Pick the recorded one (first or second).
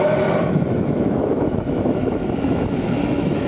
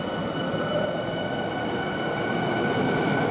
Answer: second